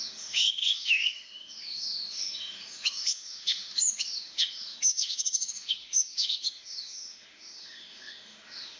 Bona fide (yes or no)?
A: no